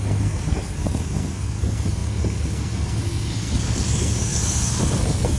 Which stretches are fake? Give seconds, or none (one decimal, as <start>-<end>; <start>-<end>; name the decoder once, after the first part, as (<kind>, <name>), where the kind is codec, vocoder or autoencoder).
0.0-5.4 (codec, SNAC)